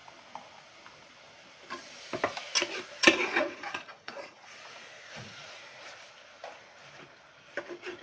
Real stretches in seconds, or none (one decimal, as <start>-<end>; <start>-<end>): 0.0-3.0; 5.8-8.0